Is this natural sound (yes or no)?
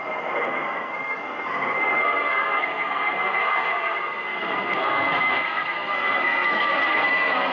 no